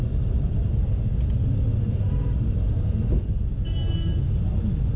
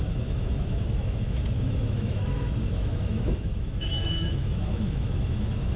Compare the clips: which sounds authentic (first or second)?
first